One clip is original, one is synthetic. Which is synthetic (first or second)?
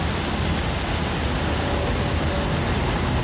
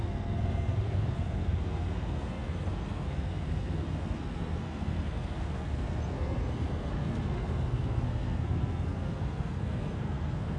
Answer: second